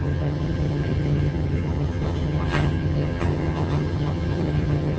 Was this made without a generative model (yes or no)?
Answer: no